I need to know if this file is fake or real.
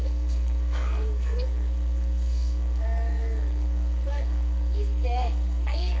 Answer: fake